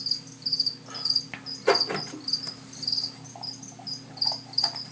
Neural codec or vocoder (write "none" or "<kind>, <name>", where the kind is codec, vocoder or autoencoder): none